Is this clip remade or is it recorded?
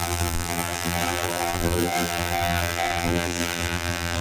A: remade